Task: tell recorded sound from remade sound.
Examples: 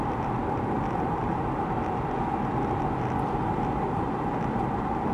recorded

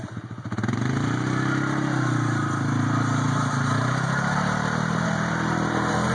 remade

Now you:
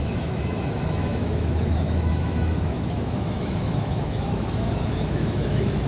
remade